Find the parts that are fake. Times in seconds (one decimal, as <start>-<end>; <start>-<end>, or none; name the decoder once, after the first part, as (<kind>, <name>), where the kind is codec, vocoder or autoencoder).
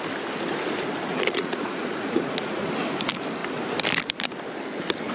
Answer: 1.1-2.7 (vocoder, Vocos)